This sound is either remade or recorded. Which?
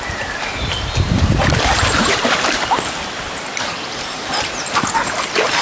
remade